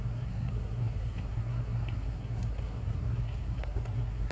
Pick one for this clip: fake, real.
fake